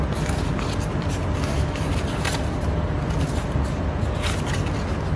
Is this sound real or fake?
real